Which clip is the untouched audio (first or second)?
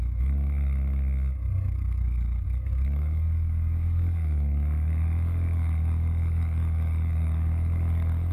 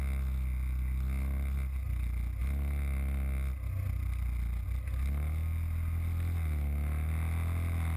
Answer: second